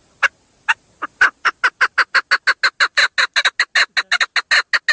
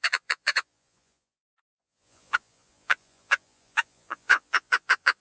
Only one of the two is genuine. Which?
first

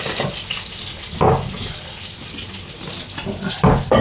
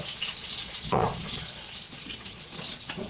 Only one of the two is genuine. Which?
first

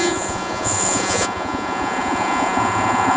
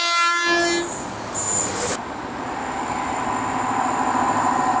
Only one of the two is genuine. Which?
second